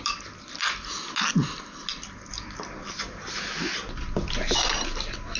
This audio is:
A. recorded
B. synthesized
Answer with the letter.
A